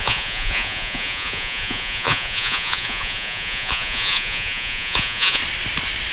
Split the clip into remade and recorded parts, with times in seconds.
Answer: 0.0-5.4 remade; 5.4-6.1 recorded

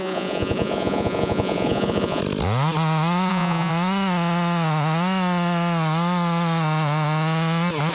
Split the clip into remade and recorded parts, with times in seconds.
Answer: 0.0-2.2 remade; 2.2-3.3 recorded; 3.3-3.7 remade; 3.7-7.9 recorded

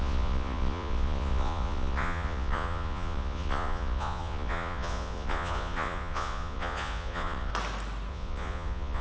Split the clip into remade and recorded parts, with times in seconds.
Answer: 0.0-7.5 remade; 7.5-8.1 recorded; 8.1-9.0 remade